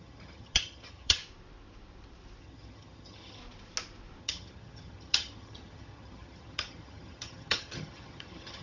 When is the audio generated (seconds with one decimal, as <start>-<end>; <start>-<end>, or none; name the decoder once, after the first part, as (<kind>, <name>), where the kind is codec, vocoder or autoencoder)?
0.0-1.2 (vocoder, HiFi-GAN); 2.4-3.4; 4.2-8.6